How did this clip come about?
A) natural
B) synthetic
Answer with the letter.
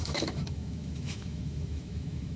B